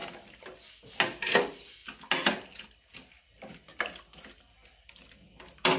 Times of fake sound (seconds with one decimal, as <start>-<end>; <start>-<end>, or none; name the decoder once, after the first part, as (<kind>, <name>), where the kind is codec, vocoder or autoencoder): none